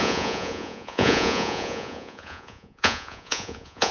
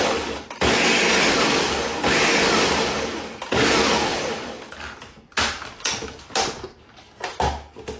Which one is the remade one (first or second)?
first